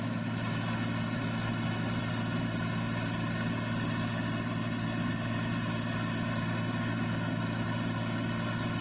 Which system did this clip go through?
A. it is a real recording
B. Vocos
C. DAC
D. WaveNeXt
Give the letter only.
A